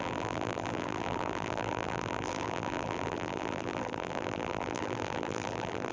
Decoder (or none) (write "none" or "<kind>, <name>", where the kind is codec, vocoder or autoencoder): vocoder, BigVGAN v2